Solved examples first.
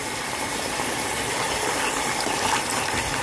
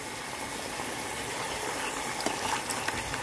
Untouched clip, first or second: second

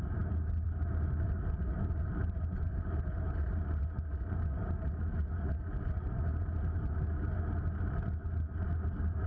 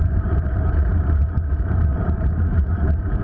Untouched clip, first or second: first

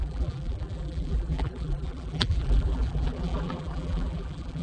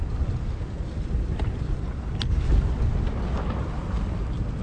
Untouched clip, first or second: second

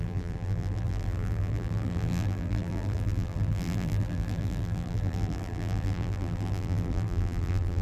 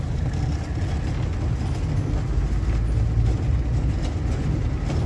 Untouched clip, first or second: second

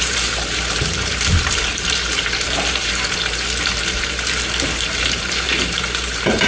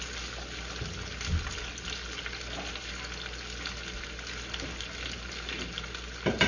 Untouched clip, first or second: second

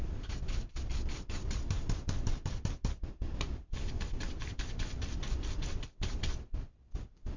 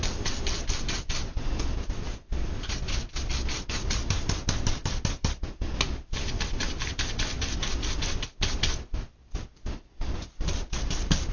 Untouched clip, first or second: second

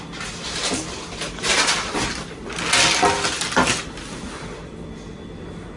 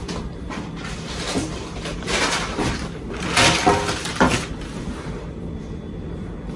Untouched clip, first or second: first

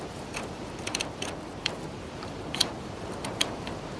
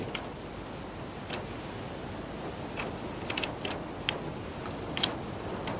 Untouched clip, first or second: second